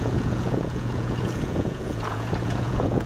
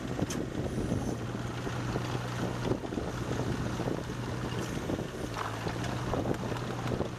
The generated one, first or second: first